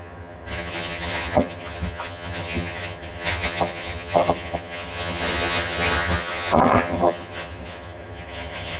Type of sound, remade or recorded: remade